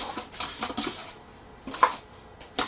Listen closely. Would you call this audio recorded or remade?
recorded